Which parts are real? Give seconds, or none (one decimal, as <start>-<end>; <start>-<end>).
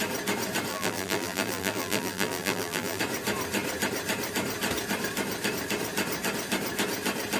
0.0-0.7; 3.0-7.4